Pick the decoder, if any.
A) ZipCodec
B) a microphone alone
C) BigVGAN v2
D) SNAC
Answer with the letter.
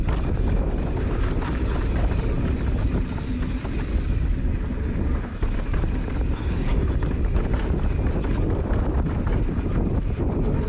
B